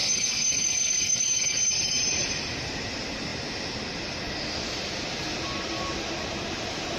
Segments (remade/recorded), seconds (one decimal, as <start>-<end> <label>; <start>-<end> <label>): 0.0-2.0 remade; 2.0-7.0 recorded